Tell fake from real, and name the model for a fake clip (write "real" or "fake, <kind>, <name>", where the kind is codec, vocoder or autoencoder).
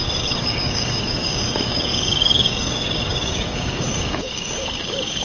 fake, codec, DAC